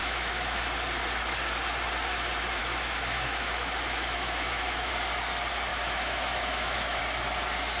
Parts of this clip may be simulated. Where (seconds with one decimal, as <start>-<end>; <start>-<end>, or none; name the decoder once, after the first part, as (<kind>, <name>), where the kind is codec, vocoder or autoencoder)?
0.0-0.6 (autoencoder, DAC-VAE); 2.6-4.9; 5.7-7.0